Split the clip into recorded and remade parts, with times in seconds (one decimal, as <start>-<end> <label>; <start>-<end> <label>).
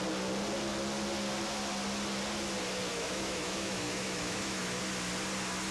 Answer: 0.0-2.9 recorded; 2.9-4.8 remade; 4.8-5.7 recorded